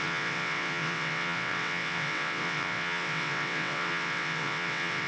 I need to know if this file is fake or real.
fake